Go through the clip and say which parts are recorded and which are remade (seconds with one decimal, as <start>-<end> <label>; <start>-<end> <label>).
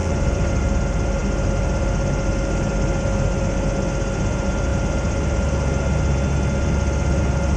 0.0-0.5 remade; 0.5-7.6 recorded